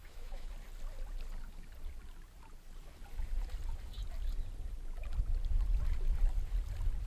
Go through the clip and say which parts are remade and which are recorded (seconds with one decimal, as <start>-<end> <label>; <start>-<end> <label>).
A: 0.0-0.5 remade; 0.5-7.1 recorded